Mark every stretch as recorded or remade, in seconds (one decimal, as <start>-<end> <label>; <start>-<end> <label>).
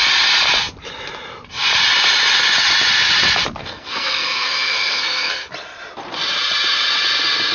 0.0-3.6 recorded; 3.6-5.5 remade; 5.5-7.5 recorded